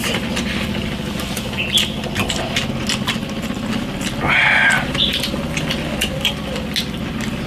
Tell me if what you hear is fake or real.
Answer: real